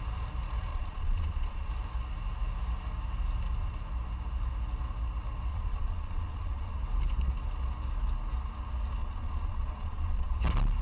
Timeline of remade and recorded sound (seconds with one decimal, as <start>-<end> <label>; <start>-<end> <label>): 0.0-0.7 recorded; 0.7-1.7 remade; 1.7-5.5 recorded; 5.5-6.8 remade; 6.8-9.0 recorded; 9.0-10.4 remade; 10.4-10.8 recorded